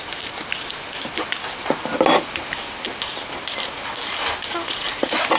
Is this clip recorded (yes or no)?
yes